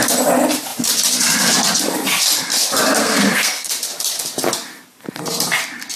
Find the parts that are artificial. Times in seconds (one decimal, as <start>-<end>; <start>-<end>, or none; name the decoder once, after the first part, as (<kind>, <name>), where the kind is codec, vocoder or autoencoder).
3.0-3.7 (codec, SNAC)